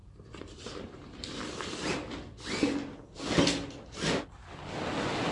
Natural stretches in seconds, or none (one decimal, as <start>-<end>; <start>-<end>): 2.1-5.3